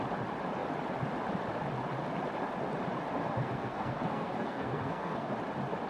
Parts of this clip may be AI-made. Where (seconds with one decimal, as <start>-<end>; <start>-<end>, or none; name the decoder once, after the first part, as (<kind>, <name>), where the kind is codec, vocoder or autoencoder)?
3.2-5.3 (codec, SNAC)